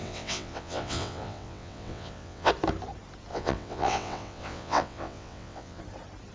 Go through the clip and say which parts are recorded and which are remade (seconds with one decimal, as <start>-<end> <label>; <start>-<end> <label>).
0.0-2.5 remade; 2.5-3.3 recorded; 3.3-5.8 remade; 5.8-6.3 recorded

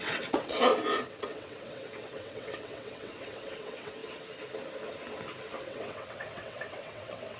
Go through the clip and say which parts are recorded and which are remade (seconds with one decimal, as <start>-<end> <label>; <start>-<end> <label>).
0.0-0.7 remade; 0.7-1.2 recorded; 1.2-4.0 remade; 4.0-5.6 recorded; 5.6-7.4 remade

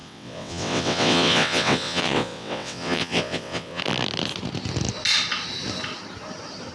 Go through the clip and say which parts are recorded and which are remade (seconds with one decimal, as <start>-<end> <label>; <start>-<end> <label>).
0.0-3.8 remade; 3.8-6.7 recorded

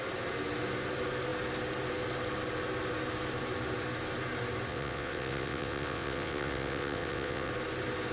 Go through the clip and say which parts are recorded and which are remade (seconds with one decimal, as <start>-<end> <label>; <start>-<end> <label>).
0.0-4.7 recorded; 4.7-7.5 remade; 7.5-8.1 recorded

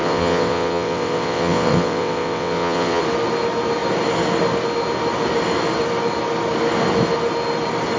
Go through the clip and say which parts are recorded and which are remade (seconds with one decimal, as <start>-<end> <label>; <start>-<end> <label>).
0.0-3.0 remade; 3.0-8.0 recorded

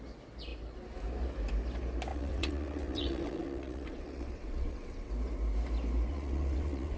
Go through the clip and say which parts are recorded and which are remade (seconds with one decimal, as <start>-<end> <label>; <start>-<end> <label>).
0.0-2.1 recorded; 2.1-5.1 remade; 5.1-6.1 recorded; 6.1-7.0 remade

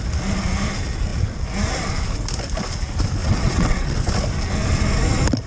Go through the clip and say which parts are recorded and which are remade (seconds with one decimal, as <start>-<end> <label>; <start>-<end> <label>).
0.0-3.2 recorded; 3.2-4.1 remade; 4.1-5.5 recorded

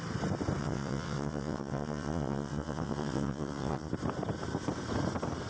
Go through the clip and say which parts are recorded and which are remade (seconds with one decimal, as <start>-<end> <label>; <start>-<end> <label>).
0.0-0.6 recorded; 0.6-3.9 remade; 3.9-5.5 recorded